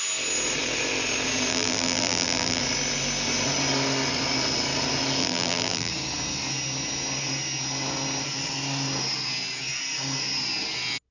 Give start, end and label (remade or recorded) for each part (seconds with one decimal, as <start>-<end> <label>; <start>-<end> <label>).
0.0-1.5 recorded; 1.5-2.6 remade; 2.6-5.2 recorded; 5.2-5.9 remade; 5.9-11.1 recorded

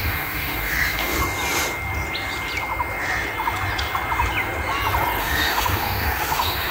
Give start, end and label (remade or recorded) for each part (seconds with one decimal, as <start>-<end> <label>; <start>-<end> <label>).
0.0-1.2 remade; 1.2-5.2 recorded; 5.2-6.7 remade

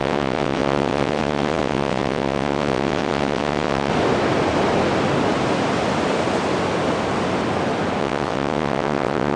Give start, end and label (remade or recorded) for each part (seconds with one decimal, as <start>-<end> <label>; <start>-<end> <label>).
0.0-3.9 remade; 3.9-8.0 recorded; 8.0-9.4 remade

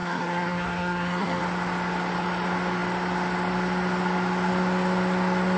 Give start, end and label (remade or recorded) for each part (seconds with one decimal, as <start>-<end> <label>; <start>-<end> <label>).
0.0-1.4 remade; 1.4-5.6 recorded

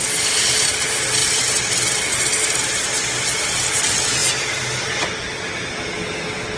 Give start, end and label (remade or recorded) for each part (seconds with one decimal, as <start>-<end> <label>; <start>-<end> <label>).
0.0-6.6 recorded

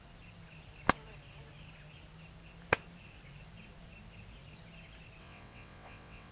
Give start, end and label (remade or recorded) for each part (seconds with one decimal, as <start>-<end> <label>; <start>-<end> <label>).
0.0-5.2 recorded; 5.2-6.3 remade

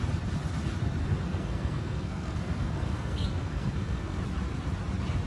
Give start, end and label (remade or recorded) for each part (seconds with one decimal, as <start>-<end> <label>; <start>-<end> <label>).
0.0-1.0 recorded; 1.0-4.2 remade; 4.2-5.3 recorded